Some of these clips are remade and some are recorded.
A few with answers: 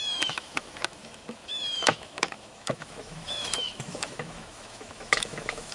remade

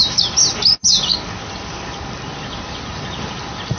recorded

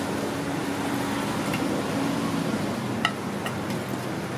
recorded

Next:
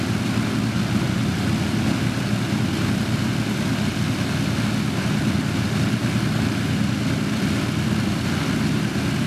recorded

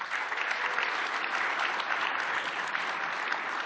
recorded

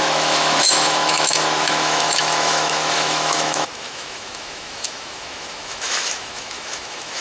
remade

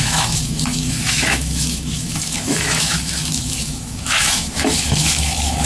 remade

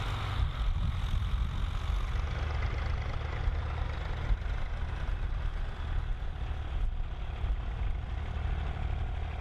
recorded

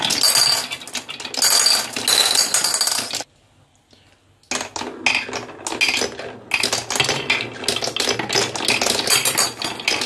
recorded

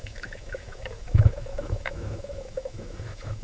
remade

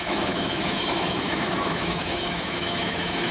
remade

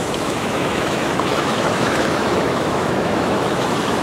remade